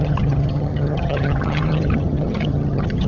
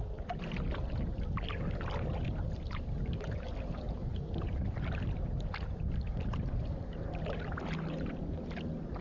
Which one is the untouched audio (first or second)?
second